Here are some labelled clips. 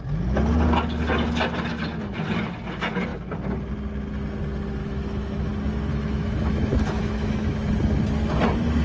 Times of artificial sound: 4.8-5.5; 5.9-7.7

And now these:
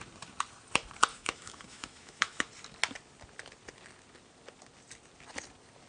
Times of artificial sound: 1.1-2.5

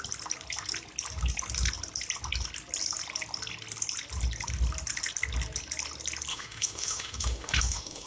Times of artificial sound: 6.3-8.1